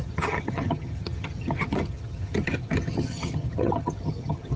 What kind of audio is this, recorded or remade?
remade